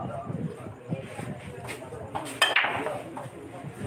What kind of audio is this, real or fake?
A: real